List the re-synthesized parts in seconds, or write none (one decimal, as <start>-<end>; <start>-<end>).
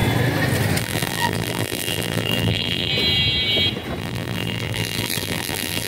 0.8-2.9; 4.0-5.9